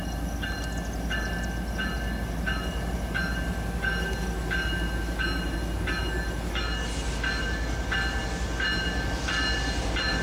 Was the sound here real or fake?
real